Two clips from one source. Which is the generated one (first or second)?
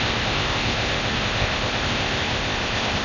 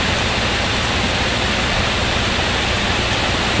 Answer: first